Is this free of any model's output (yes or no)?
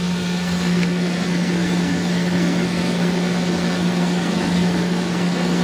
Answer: no